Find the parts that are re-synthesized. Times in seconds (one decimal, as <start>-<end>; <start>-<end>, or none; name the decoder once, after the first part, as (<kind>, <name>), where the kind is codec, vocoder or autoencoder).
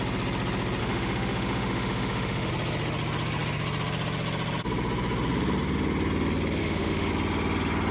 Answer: 0.8-2.5 (autoencoder, DAC-VAE); 6.6-7.1